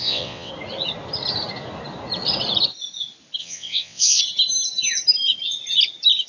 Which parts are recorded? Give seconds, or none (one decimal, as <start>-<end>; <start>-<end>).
0.5-3.4; 4.2-6.3